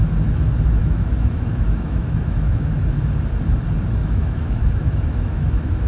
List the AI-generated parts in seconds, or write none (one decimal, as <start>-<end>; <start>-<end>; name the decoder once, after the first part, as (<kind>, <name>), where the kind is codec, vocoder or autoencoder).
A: 0.8-2.8 (autoencoder, DAC-VAE); 4.0-5.9